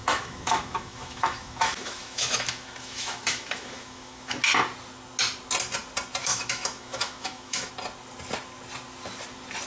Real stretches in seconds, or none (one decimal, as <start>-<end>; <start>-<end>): 4.4-6.2; 7.7-9.7